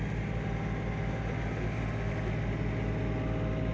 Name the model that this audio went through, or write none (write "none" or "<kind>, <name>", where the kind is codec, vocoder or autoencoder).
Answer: none